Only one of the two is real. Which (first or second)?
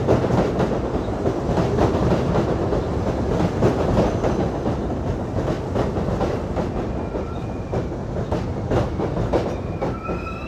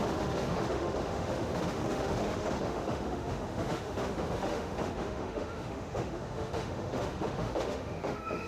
first